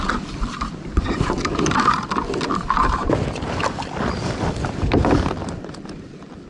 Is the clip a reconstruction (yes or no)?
yes